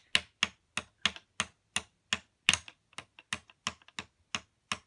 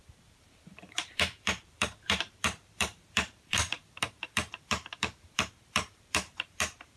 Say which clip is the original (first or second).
first